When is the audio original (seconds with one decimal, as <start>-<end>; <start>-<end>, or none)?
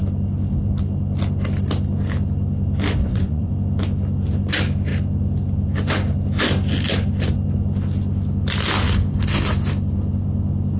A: 0.0-3.0; 3.5-10.8